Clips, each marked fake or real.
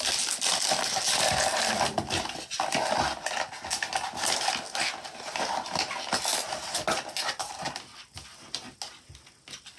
real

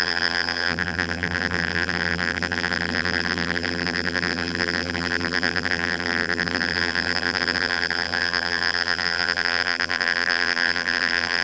fake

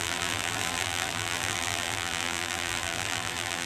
fake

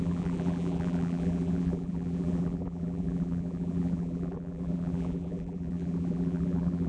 fake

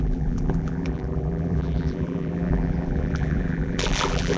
fake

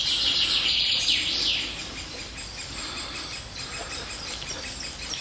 fake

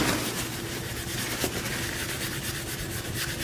real